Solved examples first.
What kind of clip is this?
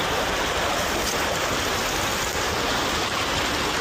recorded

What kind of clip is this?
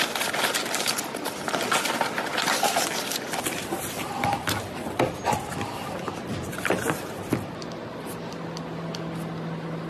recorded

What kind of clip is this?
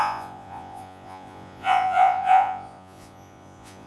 remade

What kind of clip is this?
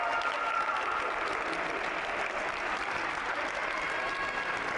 recorded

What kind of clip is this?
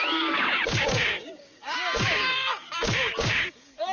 remade